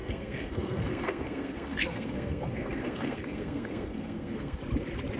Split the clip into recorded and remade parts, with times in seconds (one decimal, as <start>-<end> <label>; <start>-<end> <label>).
0.0-4.6 remade; 4.6-5.2 recorded

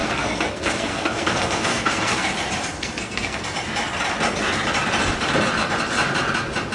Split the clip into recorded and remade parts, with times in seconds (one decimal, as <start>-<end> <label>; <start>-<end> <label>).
0.0-2.3 remade; 2.3-2.7 recorded; 2.7-3.4 remade; 3.4-6.7 recorded

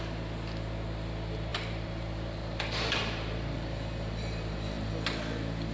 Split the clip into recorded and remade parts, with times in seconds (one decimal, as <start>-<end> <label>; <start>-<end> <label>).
0.0-1.5 recorded; 1.5-4.9 remade; 4.9-5.7 recorded

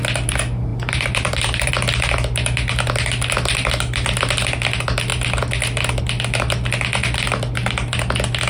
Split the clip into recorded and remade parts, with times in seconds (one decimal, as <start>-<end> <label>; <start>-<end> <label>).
0.0-0.7 recorded; 0.7-1.7 remade; 1.7-8.5 recorded

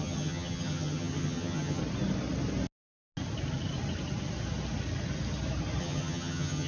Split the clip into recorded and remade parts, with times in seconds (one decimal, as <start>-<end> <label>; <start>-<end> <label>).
0.0-1.8 remade; 1.8-5.8 recorded; 5.8-6.7 remade

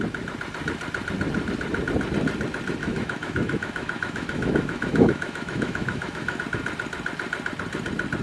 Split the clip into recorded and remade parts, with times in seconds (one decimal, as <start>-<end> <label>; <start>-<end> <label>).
0.0-2.8 recorded; 2.8-6.4 remade; 6.4-8.2 recorded

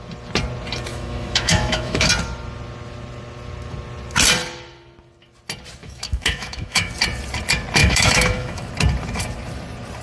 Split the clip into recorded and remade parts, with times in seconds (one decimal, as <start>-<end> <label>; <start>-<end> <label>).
0.0-0.9 recorded; 0.9-2.1 remade; 2.1-5.8 recorded; 5.8-6.9 remade; 6.9-7.8 recorded; 7.8-8.7 remade; 8.7-10.0 recorded

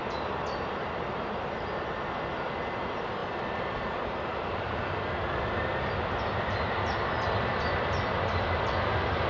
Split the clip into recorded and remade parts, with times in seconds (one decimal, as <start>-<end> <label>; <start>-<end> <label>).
0.0-9.3 recorded